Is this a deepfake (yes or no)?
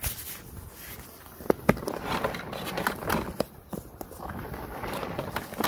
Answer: no